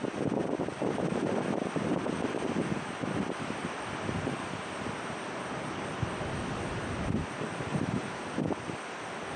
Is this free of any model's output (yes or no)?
no